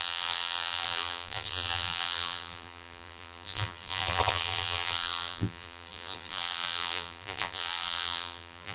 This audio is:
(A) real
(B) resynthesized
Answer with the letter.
B